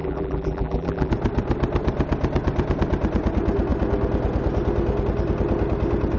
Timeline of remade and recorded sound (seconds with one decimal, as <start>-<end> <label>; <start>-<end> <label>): 0.0-1.1 remade; 1.1-6.2 recorded